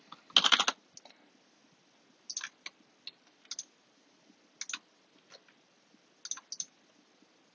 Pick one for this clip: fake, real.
real